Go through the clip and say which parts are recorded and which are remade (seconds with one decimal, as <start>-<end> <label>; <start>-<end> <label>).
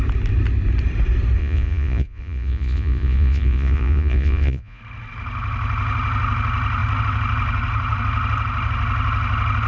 0.0-1.4 recorded; 1.4-4.8 remade; 4.8-9.7 recorded